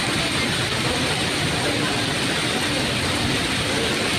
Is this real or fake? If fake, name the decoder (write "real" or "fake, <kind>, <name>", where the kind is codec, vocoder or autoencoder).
real